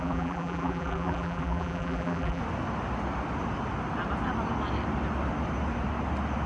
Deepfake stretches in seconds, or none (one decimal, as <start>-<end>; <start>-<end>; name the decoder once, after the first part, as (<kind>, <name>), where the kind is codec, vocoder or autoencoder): 0.0-2.4 (vocoder, BigVGAN v2)